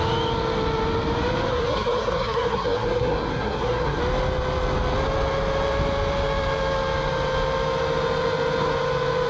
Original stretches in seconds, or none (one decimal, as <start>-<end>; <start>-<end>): 0.0-1.5; 4.0-9.3